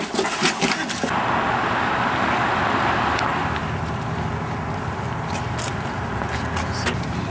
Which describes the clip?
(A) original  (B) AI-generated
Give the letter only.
A